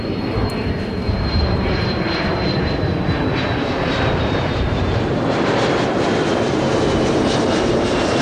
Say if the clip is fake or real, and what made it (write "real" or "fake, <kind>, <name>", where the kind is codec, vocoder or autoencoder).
fake, vocoder, BigVGAN v2